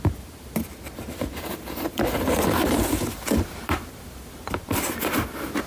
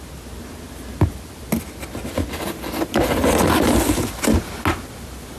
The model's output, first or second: first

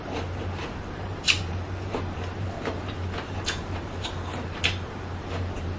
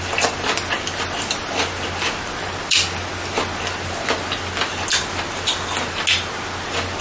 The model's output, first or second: first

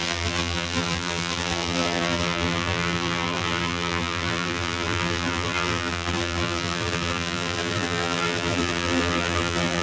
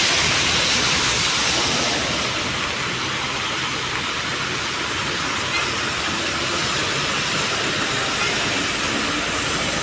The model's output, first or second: first